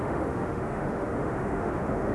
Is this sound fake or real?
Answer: fake